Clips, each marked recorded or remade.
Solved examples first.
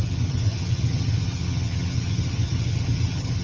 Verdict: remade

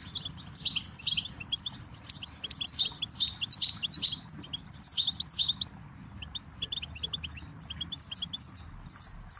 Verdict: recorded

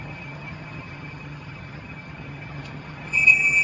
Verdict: remade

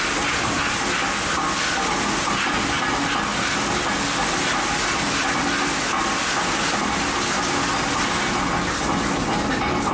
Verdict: recorded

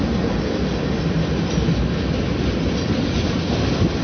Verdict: recorded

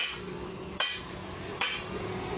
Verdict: recorded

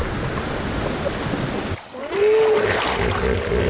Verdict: recorded